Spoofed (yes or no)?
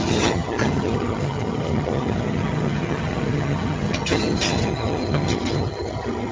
yes